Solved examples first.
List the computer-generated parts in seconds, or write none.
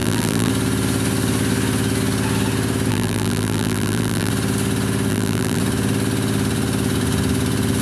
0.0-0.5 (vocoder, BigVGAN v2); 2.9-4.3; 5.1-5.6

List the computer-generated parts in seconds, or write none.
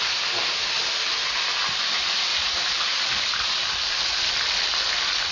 2.3-3.5 (vocoder, BigVGAN v2)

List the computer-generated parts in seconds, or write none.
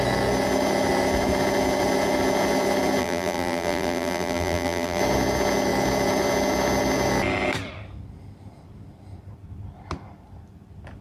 3.0-5.0 (vocoder, BigVGAN v2)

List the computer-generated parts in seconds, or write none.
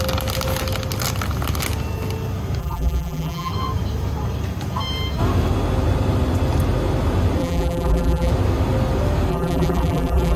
2.6-3.5 (vocoder, BigVGAN v2); 7.4-8.3; 9.3-10.4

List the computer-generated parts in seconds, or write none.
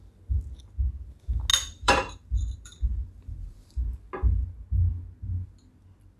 1.5-3.8 (vocoder, BigVGAN v2)